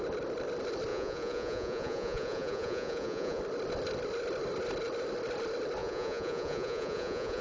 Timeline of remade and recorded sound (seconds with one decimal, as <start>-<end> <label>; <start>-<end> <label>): 0.0-0.9 recorded; 0.9-3.4 remade; 3.4-5.8 recorded; 5.8-7.4 remade